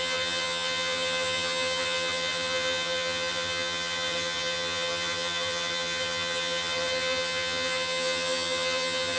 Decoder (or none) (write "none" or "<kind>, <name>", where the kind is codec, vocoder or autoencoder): vocoder, HiFi-GAN